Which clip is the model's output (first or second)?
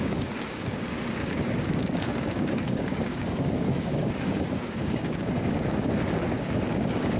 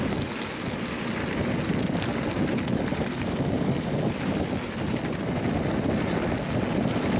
first